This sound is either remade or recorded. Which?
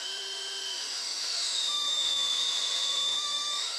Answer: remade